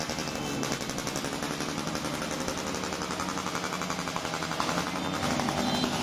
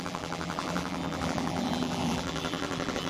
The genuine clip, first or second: first